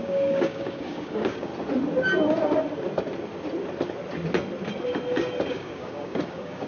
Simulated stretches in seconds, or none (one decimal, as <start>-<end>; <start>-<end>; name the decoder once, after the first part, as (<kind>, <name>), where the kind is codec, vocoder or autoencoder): 0.0-1.5 (codec, DAC); 5.5-6.7